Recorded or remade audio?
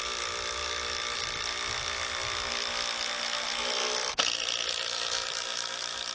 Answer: recorded